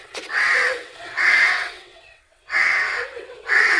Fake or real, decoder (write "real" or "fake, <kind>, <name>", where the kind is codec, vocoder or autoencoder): fake, vocoder, WaveNeXt